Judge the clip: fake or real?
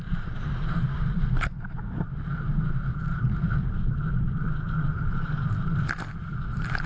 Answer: real